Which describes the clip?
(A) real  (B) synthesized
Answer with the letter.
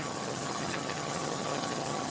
B